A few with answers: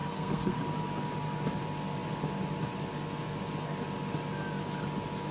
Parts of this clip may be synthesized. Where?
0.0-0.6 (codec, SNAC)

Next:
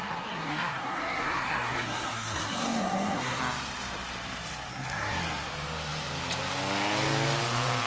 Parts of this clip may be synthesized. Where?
0.0-3.4 (codec, SNAC); 4.7-5.5

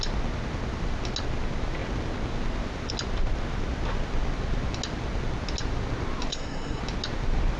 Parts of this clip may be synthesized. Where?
6.3-6.8 (codec, SNAC)

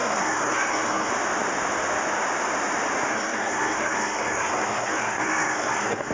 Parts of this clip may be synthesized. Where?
0.0-1.1 (codec, SNAC); 3.1-6.1

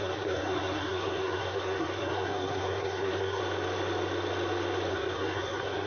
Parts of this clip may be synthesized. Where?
0.0-3.4 (codec, SNAC); 4.9-5.9

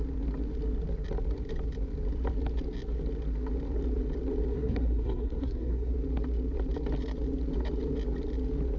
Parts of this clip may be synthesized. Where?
4.5-5.9 (codec, SNAC)

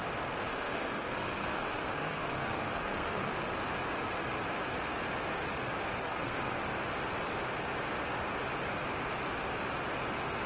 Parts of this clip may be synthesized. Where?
0.5-3.3 (codec, SNAC); 6.0-6.6

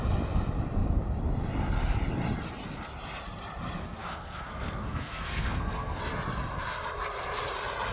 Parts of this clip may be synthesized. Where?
3.8-6.0 (codec, SNAC)